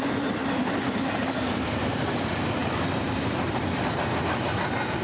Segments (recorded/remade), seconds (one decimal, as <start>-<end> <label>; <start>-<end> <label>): 0.0-0.4 recorded; 0.4-2.2 remade; 2.2-2.6 recorded; 2.6-3.9 remade; 3.9-5.0 recorded